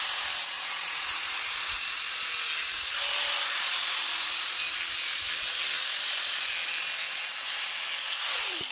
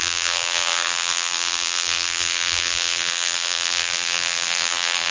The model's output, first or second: second